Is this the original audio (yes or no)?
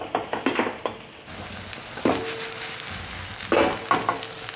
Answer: yes